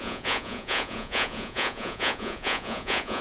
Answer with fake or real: fake